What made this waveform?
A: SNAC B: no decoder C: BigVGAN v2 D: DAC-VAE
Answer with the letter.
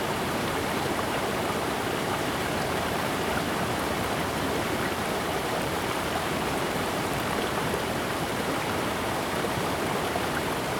C